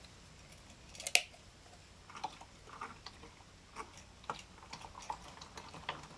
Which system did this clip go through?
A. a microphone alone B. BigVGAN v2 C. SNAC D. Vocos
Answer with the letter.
A